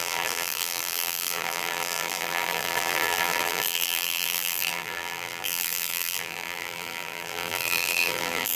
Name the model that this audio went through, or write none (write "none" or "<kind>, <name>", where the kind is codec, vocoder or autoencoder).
vocoder, BigVGAN v2